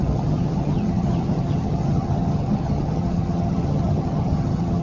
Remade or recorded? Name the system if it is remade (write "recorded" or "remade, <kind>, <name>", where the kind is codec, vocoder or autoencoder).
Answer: remade, vocoder, HiFi-GAN